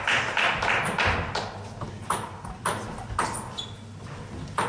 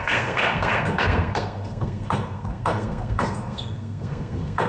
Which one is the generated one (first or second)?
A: second